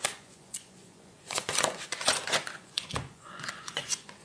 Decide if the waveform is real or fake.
fake